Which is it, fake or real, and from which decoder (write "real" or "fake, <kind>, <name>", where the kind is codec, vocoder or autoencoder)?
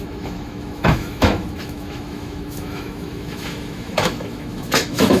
fake, autoencoder, DAC-VAE